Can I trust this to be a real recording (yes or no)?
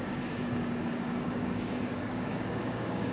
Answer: no